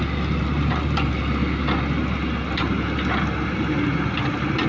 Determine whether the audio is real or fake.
real